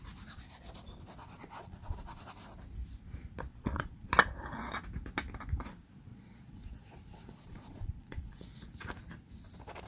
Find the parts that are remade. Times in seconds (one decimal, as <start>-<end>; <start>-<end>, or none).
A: 1.2-2.3; 3.5-4.1; 6.1-8.7